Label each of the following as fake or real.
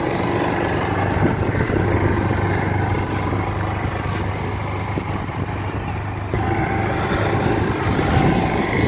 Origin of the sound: real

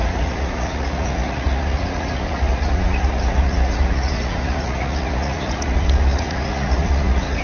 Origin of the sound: fake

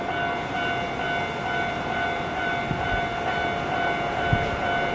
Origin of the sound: real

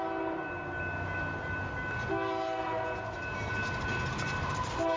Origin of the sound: real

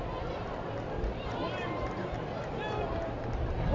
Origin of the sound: real